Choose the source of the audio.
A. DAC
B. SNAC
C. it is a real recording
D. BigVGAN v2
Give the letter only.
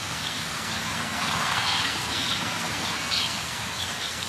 B